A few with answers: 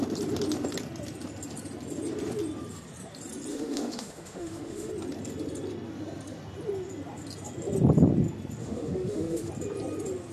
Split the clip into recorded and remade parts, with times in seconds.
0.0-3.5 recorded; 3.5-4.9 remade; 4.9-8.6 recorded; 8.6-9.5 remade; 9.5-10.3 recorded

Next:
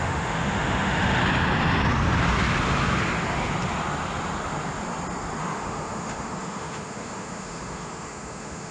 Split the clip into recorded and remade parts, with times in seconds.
0.0-1.2 remade; 1.2-5.4 recorded; 5.4-8.7 remade

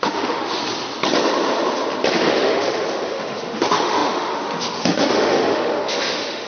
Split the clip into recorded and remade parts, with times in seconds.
0.0-0.6 remade; 0.6-2.1 recorded; 2.1-6.5 remade

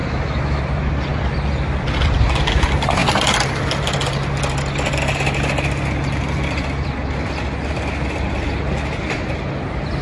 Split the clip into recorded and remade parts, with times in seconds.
0.0-0.6 remade; 0.6-10.0 recorded

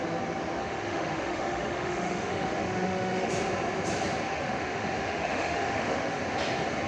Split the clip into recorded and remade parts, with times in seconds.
0.0-0.6 recorded; 0.6-3.3 remade; 3.3-4.3 recorded; 4.3-6.2 remade; 6.2-6.9 recorded

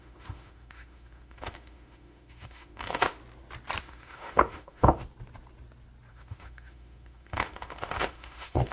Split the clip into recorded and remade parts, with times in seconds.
0.0-3.2 remade; 3.2-3.8 recorded; 3.8-5.0 remade; 5.0-6.1 recorded; 6.1-8.7 remade

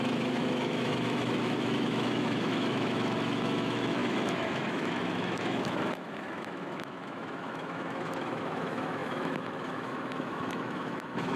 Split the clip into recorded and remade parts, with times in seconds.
0.0-11.4 remade